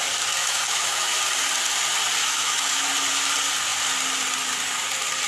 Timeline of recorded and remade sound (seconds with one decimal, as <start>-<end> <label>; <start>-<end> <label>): 0.0-0.4 recorded; 0.4-1.2 remade; 1.2-2.2 recorded; 2.2-2.9 remade; 2.9-5.3 recorded